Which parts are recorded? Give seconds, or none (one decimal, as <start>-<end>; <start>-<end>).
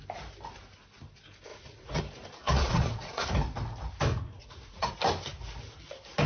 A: 0.0-1.5; 2.0-2.4; 3.3-4.1; 4.9-6.3